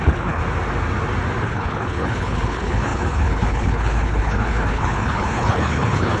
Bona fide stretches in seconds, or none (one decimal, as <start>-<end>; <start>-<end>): 0.4-1.4